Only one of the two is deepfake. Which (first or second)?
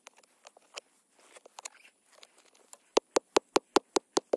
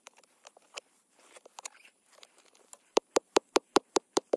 second